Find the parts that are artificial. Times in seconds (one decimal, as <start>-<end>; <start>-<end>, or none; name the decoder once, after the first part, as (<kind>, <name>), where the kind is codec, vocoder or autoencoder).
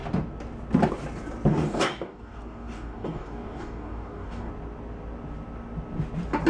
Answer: 1.5-4.5 (codec, DAC)